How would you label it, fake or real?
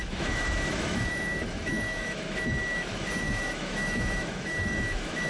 fake